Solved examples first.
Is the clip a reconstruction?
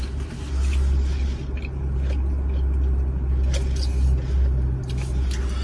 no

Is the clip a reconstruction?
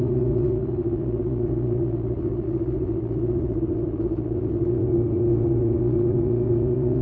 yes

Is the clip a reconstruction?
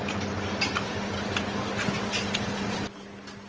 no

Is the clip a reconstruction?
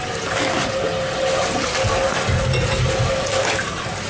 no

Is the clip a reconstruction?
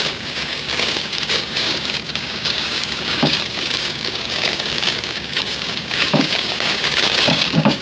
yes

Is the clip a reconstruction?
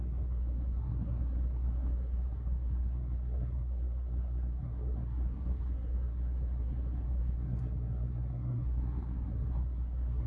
yes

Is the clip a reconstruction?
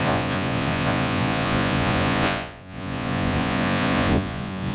yes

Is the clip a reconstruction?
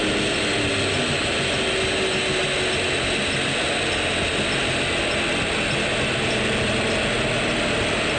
no